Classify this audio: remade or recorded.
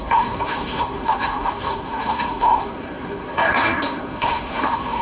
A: remade